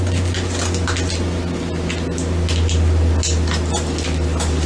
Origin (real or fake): real